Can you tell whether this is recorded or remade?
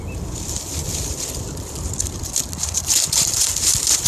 remade